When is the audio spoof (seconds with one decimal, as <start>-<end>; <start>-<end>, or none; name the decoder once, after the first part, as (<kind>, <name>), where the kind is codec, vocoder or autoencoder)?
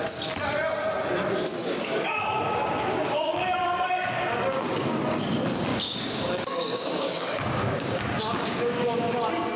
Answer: 1.6-5.0 (codec, DAC); 5.7-9.1